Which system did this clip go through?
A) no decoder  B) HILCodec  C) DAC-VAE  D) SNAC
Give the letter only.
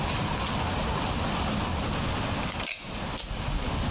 A